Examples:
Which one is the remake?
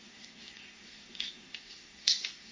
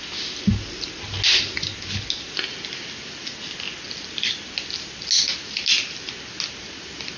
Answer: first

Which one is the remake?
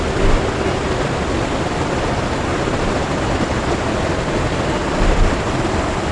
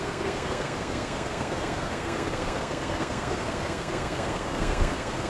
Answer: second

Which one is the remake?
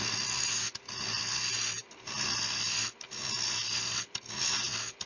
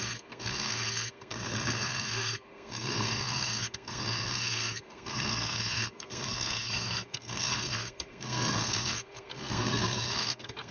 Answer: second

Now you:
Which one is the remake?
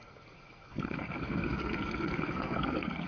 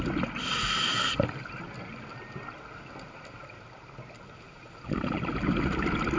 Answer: first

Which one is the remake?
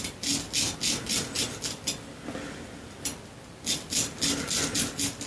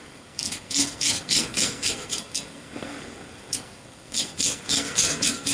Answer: second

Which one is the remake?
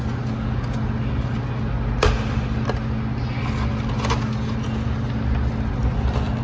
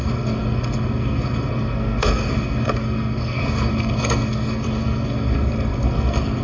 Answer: second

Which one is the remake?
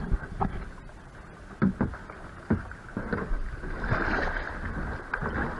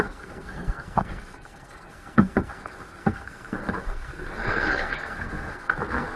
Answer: second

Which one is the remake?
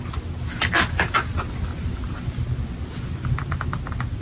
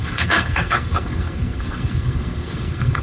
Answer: second